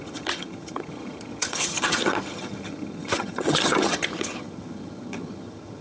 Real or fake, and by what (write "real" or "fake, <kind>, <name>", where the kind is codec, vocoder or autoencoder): fake, vocoder, HiFi-GAN